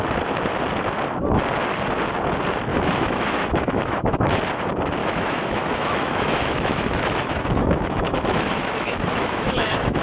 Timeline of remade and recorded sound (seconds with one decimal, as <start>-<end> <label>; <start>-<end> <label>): 0.0-2.7 recorded; 2.7-4.4 remade; 4.4-5.0 recorded; 5.0-10.0 remade